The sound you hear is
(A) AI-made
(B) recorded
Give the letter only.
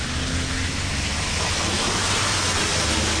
B